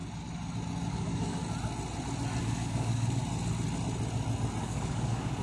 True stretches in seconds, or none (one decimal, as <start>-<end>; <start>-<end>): 0.0-0.9; 1.4-2.4; 3.2-4.6